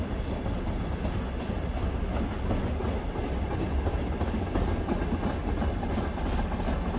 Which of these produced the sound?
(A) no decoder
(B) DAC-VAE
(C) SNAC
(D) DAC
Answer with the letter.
A